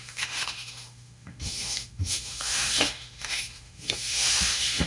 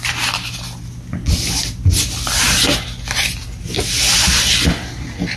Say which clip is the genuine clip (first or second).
second